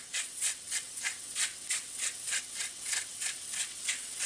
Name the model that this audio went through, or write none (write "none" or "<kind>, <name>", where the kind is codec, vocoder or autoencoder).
vocoder, WaveNeXt